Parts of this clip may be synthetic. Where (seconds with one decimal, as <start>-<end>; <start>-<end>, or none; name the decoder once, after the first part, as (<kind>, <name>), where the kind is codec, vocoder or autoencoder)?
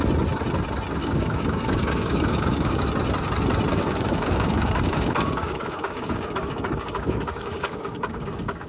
1.0-2.8 (codec, DAC); 3.7-8.7